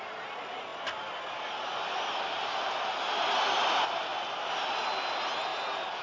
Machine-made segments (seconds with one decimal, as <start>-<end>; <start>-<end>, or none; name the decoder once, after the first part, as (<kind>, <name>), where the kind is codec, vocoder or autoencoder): 5.5-6.0 (vocoder, BigVGAN v2)